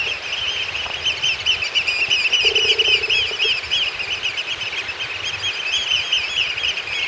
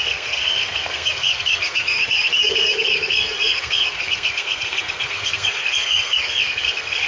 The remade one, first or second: second